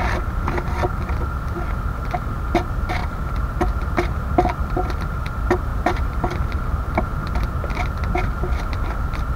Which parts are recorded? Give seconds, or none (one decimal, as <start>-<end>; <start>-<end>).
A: 0.0-3.0; 3.6-5.7; 6.4-9.4

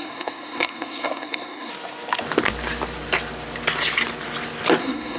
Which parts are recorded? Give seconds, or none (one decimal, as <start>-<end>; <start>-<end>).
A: 1.7-4.8

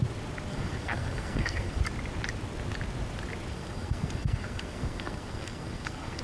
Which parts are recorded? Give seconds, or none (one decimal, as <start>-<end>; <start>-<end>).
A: 0.0-0.5; 1.8-3.5

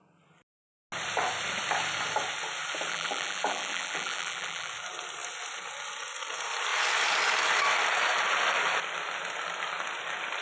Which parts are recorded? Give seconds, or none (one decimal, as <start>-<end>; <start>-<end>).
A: 0.0-2.9; 4.7-10.4